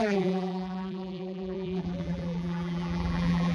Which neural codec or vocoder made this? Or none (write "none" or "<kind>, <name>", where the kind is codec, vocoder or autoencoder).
vocoder, BigVGAN v2